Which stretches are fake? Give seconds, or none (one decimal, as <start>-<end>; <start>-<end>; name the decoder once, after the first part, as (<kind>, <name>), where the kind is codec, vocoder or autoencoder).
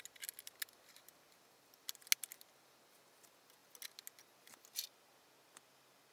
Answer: none